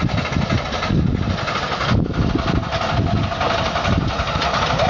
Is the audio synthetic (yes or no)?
no